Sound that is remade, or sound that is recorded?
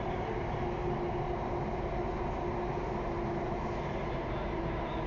recorded